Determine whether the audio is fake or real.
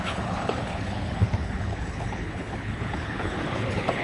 fake